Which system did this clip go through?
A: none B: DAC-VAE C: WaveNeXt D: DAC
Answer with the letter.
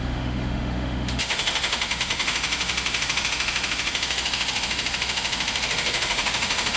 B